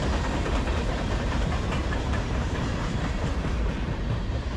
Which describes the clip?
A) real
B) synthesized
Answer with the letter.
B